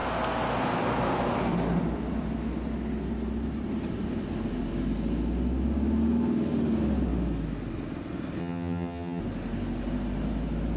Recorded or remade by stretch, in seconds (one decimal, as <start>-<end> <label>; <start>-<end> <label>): 0.0-8.4 recorded; 8.4-9.2 remade; 9.2-10.8 recorded